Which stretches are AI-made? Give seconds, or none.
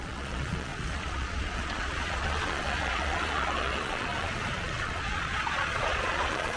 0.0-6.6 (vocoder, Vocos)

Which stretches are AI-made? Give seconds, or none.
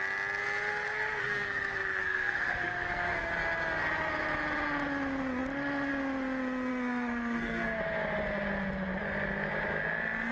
0.7-3.3 (codec, SNAC); 6.7-7.8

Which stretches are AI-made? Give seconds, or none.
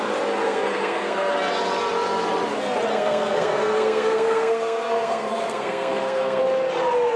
0.4-1.3 (codec, SNAC); 2.9-6.4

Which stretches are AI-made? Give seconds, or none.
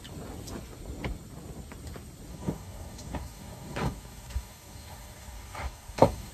2.3-6.3 (codec, DAC)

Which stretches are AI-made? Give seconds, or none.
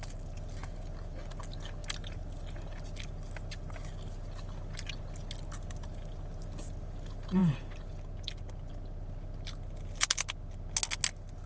none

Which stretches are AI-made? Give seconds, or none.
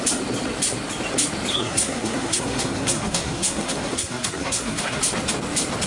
1.5-5.0 (codec, SNAC)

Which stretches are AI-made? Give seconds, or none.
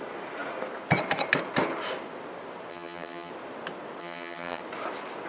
2.7-3.3 (vocoder, HiFi-GAN); 4.0-4.6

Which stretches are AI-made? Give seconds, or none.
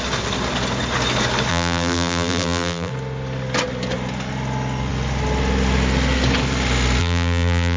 1.5-2.9 (vocoder, BigVGAN v2); 7.0-7.8